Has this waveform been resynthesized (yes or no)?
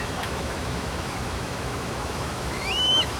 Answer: yes